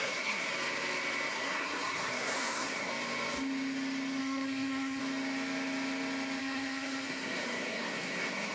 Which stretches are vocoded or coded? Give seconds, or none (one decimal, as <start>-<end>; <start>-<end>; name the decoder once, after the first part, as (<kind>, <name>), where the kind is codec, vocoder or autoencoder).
0.0-0.5 (codec, SNAC); 1.3-2.9; 4.2-5.0; 6.4-8.5